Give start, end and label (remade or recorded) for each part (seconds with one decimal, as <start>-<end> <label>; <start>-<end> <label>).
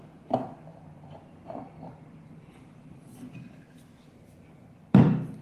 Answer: 0.0-5.4 recorded